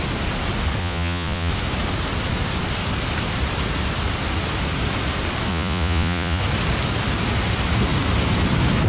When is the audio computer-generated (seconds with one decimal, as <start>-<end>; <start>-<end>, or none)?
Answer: 0.8-1.5; 5.5-6.4